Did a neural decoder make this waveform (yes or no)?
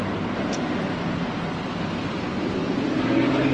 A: no